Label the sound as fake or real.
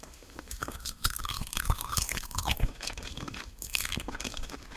fake